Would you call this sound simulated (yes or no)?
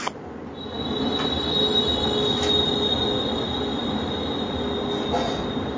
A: no